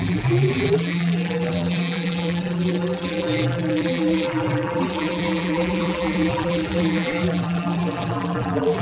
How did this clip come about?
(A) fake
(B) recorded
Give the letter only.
A